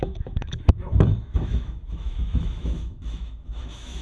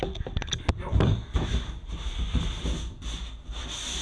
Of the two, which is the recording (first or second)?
second